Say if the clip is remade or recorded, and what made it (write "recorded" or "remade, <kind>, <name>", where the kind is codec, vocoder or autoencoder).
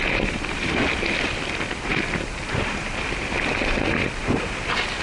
recorded